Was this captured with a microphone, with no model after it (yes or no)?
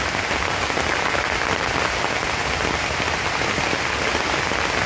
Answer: yes